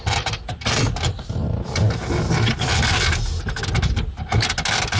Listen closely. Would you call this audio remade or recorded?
recorded